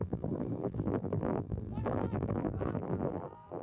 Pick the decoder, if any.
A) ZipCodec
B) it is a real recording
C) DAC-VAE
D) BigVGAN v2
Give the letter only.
D